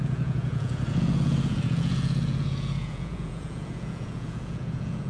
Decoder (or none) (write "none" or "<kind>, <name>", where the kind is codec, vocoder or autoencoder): vocoder, Vocos